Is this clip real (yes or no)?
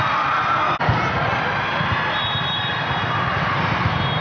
yes